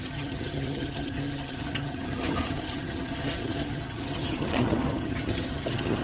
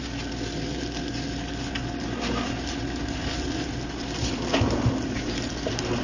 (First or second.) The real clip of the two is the second